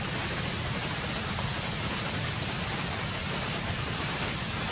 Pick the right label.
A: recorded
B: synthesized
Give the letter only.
A